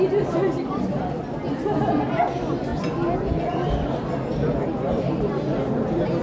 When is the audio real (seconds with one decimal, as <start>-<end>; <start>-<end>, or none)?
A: 0.0-6.2